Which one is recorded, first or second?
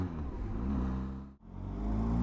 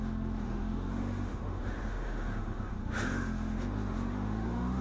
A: first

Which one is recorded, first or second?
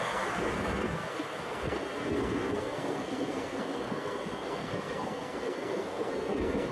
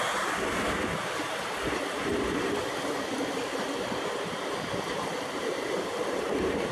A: second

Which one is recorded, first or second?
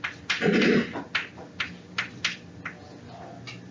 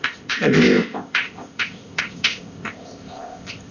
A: first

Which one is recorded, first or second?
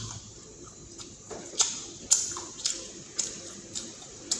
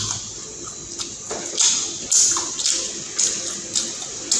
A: second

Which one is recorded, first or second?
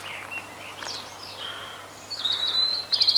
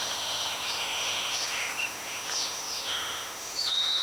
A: first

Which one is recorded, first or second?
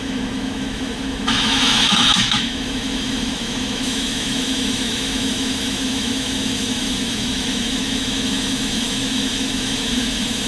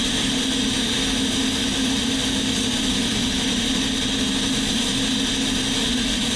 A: second